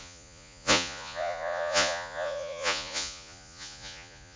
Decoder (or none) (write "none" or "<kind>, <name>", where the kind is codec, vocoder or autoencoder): vocoder, Vocos